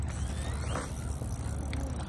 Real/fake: real